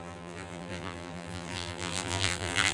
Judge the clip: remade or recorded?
remade